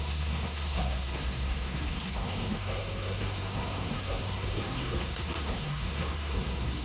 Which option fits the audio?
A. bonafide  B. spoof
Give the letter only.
B